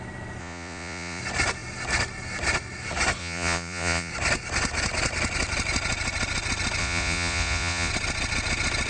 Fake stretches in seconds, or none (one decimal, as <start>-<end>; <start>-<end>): 0.4-1.2; 3.2-4.1; 6.8-7.9